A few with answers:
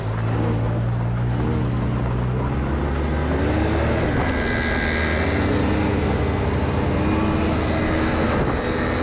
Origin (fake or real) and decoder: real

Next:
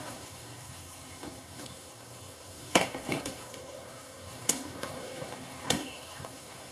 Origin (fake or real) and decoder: fake, codec, SNAC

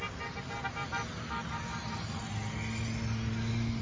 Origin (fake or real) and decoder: real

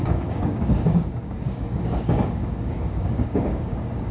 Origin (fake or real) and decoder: fake, codec, DAC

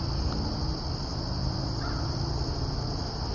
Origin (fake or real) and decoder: real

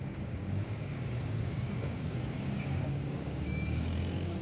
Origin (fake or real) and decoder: fake, codec, DAC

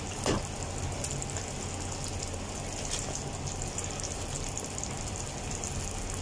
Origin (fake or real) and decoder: real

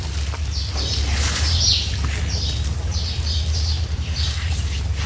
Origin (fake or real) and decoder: real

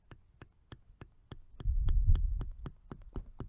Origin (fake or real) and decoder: real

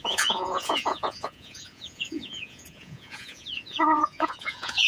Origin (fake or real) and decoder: fake, vocoder, Vocos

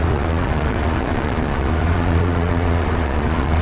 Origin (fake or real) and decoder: fake, vocoder, Vocos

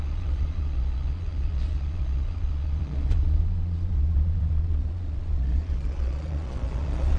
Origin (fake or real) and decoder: fake, vocoder, Vocos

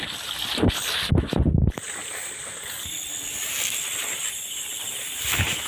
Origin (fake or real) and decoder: real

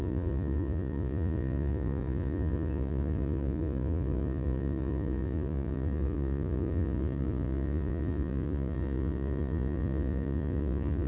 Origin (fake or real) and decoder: fake, vocoder, Vocos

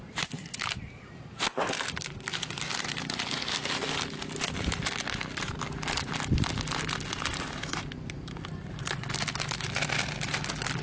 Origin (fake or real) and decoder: real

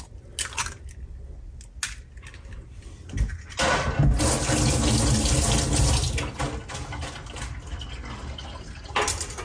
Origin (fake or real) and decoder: real